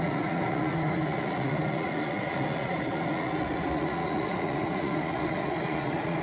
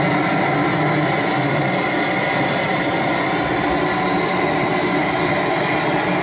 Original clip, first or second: second